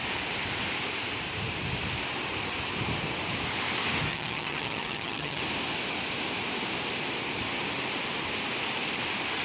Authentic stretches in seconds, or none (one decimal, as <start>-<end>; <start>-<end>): 0.0-4.1; 5.4-9.4